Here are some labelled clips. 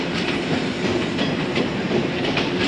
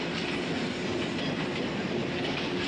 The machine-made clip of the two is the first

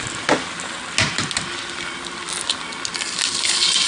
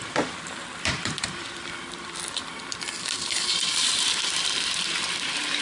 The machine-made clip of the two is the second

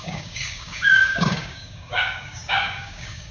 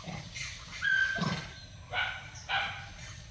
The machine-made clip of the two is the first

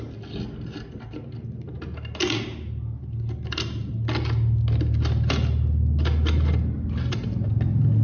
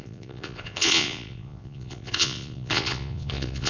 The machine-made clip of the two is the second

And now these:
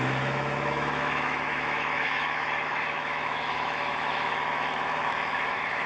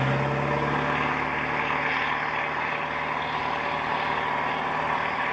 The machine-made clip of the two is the first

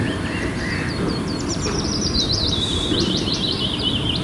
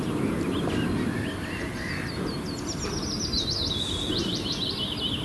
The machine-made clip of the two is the first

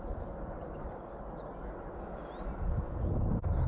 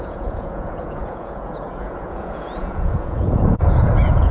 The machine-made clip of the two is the second